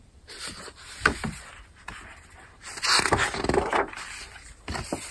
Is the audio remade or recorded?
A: remade